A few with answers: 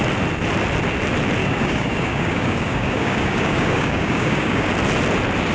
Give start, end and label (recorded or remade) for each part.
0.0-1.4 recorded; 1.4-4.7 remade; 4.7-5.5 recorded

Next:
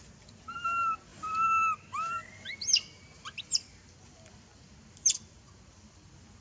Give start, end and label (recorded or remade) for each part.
0.0-6.4 recorded

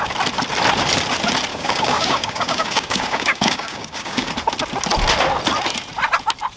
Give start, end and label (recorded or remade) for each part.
0.0-1.5 recorded; 1.5-4.3 remade; 4.3-6.6 recorded

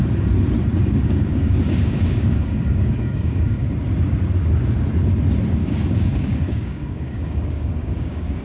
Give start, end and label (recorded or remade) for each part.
0.0-0.7 recorded; 0.7-3.7 remade; 3.7-5.6 recorded; 5.6-8.4 remade